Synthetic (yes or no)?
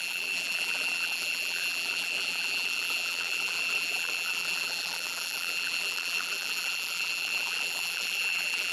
yes